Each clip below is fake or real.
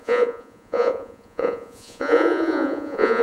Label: fake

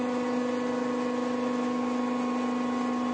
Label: real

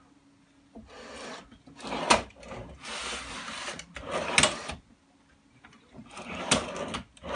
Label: real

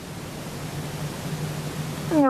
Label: real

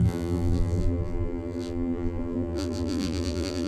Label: fake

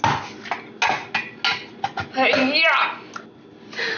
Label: real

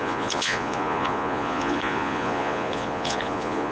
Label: fake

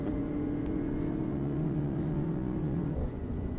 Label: fake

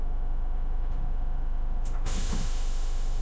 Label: fake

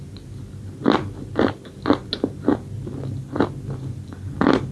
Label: real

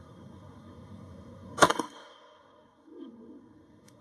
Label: fake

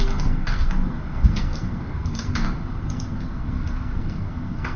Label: fake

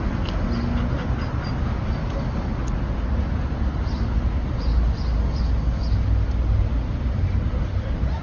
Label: real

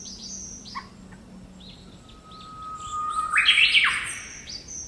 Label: real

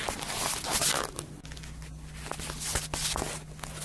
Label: real